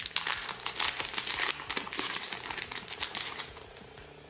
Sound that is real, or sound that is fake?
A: real